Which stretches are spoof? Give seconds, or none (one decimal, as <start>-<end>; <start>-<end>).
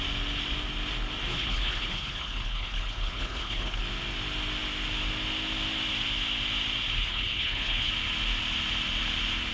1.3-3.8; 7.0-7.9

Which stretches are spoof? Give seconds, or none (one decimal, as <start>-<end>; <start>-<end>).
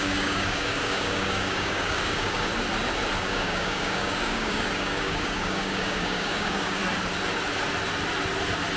0.0-2.5; 3.2-6.8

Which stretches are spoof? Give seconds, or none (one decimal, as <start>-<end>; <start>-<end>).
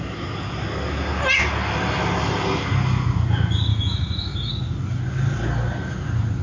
3.7-4.5